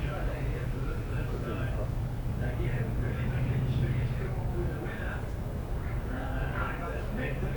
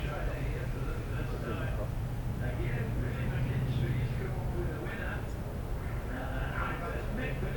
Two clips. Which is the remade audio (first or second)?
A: first